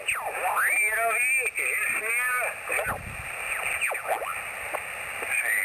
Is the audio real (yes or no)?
yes